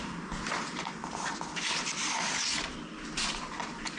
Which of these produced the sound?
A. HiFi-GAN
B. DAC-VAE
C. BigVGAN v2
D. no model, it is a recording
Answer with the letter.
D